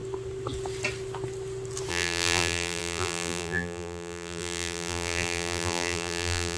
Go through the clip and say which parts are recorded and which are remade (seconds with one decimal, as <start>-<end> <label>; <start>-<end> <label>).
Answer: 0.0-1.9 recorded; 1.9-6.6 remade

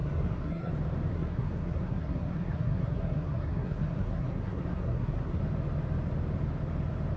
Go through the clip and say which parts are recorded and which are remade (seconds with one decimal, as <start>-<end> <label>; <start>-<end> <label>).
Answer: 0.0-0.7 remade; 0.7-1.1 recorded; 1.1-5.4 remade; 5.4-7.2 recorded

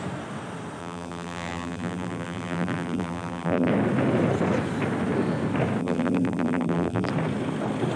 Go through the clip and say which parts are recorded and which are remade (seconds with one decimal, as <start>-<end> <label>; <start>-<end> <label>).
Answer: 0.0-0.8 recorded; 0.8-3.7 remade; 3.7-5.8 recorded; 5.8-7.1 remade; 7.1-8.0 recorded

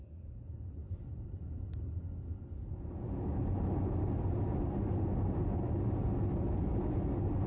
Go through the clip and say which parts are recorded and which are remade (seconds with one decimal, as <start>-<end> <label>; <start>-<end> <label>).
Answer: 0.0-0.8 recorded; 0.8-1.3 remade; 1.3-7.5 recorded

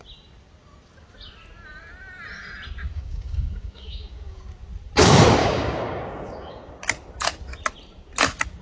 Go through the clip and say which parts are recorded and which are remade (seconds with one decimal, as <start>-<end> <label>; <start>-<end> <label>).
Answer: 0.0-2.9 recorded; 2.9-4.4 remade; 4.4-5.4 recorded; 5.4-6.7 remade; 6.7-8.6 recorded